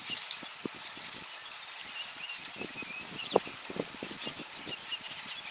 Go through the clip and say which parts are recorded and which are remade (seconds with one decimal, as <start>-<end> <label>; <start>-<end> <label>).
0.0-1.8 recorded; 1.8-5.1 remade; 5.1-5.5 recorded